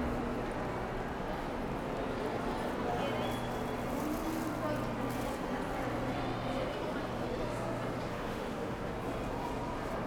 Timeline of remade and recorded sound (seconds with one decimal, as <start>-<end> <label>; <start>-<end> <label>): 0.0-8.1 recorded; 8.1-8.9 remade; 8.9-10.1 recorded

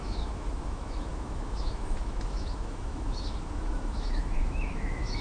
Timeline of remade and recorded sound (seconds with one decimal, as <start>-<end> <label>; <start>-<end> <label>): 0.0-5.2 remade

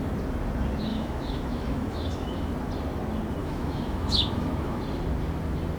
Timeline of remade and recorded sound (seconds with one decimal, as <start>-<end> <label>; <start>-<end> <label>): 0.0-0.9 recorded; 0.9-2.5 remade; 2.5-3.4 recorded; 3.4-4.8 remade; 4.8-5.8 recorded